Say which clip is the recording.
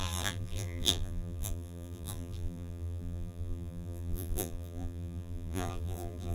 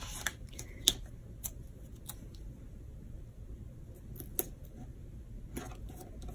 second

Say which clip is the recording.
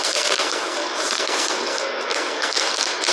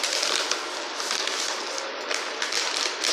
second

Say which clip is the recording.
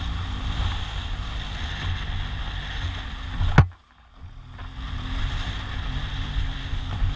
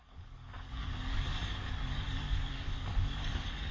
first